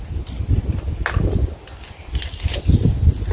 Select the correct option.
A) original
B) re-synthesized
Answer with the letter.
A